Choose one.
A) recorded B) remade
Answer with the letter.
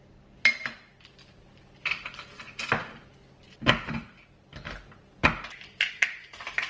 A